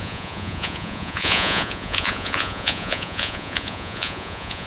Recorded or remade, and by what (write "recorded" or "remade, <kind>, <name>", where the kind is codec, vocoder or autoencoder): remade, vocoder, Vocos